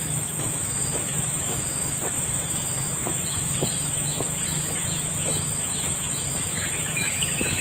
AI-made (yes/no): yes